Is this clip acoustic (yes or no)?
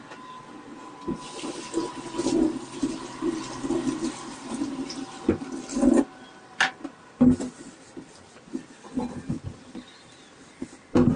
yes